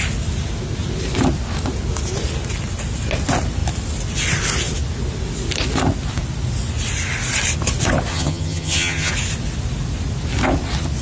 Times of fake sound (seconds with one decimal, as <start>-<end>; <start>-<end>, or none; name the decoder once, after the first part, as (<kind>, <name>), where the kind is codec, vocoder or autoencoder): 8.1-9.1 (vocoder, HiFi-GAN)